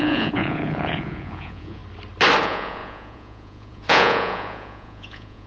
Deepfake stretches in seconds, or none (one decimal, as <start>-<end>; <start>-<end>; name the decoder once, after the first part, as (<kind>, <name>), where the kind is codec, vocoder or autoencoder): 0.0-1.8 (vocoder, Vocos); 2.4-5.5

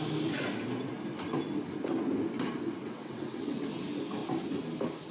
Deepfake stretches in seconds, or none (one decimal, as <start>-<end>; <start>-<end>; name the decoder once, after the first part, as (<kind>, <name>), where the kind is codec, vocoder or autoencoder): 2.8-3.7 (vocoder, WaveNeXt)